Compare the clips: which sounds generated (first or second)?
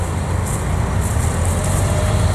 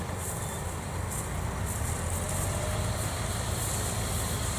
second